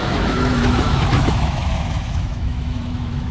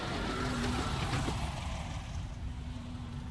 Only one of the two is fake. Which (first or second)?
first